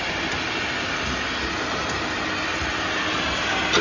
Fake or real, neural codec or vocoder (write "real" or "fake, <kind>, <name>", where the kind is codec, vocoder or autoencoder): real